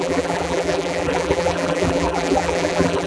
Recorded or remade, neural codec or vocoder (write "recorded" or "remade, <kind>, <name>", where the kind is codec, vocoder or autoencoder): remade, vocoder, BigVGAN v2